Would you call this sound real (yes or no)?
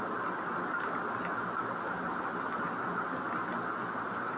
yes